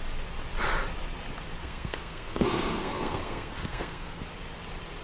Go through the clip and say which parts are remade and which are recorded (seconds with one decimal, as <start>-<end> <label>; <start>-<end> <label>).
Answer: 0.0-1.6 recorded; 1.6-4.2 remade; 4.2-5.0 recorded